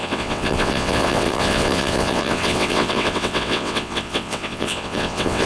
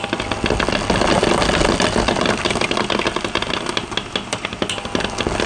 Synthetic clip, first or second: first